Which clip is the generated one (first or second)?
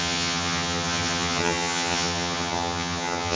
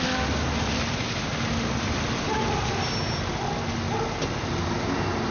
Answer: first